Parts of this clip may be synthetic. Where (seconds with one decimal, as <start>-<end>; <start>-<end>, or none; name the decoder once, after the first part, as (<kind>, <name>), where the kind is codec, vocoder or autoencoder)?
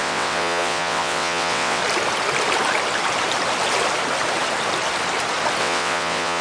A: 0.0-1.8 (vocoder, WaveNeXt); 5.6-6.4